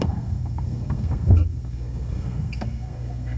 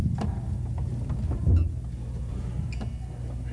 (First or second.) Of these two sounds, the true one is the second